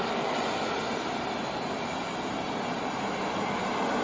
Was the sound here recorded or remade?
recorded